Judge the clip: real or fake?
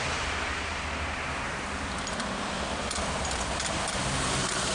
fake